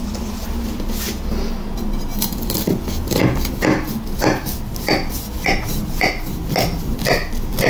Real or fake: real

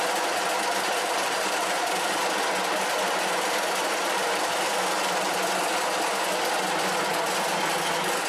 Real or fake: real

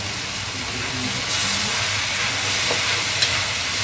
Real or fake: real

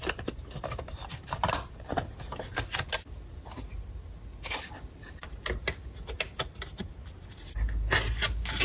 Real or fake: real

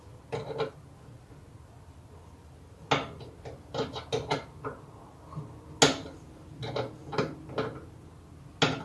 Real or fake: real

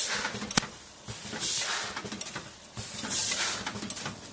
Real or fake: real